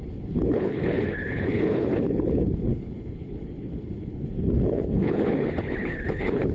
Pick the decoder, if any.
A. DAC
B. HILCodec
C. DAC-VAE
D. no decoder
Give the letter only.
B